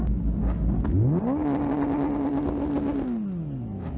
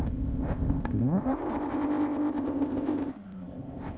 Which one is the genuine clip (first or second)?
first